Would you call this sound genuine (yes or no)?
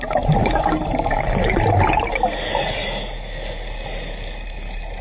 yes